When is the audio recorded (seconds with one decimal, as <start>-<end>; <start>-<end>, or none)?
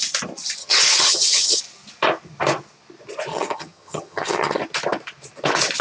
0.0-0.6; 1.6-3.3; 4.6-5.8